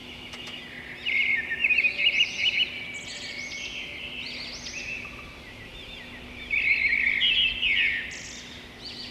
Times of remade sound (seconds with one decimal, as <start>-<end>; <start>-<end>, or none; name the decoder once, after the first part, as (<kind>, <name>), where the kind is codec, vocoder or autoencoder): 0.0-0.6 (autoencoder, DAC-VAE)